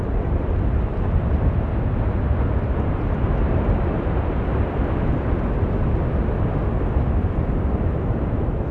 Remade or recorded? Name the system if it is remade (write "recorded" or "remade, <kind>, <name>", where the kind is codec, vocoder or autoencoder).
recorded